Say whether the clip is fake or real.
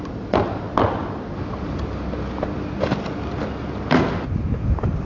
real